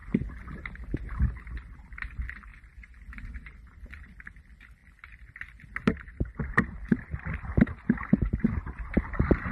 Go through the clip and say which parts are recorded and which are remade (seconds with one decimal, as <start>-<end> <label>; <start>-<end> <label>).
0.0-4.8 recorded; 4.8-6.8 remade; 6.8-9.5 recorded